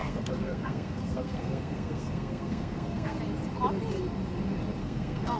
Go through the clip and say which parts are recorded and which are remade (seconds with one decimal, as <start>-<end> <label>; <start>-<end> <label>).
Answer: 0.0-3.2 remade; 3.2-4.8 recorded; 4.8-5.4 remade